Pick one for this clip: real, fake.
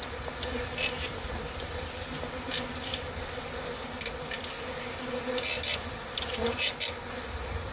real